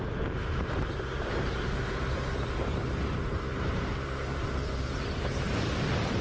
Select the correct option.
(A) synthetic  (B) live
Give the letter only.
A